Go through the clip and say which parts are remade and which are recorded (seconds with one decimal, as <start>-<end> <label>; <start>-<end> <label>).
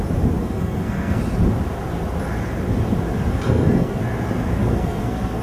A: 0.0-0.4 recorded; 0.4-1.2 remade; 1.2-3.3 recorded; 3.3-4.0 remade; 4.0-4.6 recorded; 4.6-5.4 remade